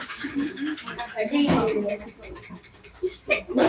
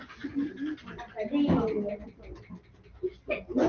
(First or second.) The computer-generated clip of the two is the first